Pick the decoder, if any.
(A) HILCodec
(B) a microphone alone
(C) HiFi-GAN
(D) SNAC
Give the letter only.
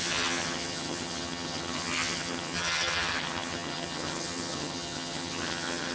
C